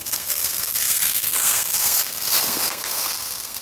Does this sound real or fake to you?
fake